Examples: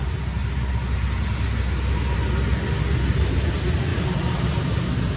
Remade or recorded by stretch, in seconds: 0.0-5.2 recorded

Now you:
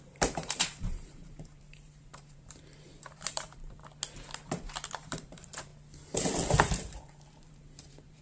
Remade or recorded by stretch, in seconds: 0.0-3.8 remade; 3.8-4.9 recorded; 4.9-5.7 remade; 5.7-6.5 recorded; 6.5-8.2 remade